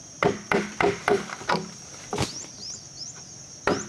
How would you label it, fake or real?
fake